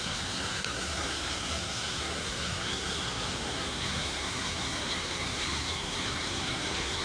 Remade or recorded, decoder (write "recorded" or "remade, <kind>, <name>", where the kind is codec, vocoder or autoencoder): remade, codec, SNAC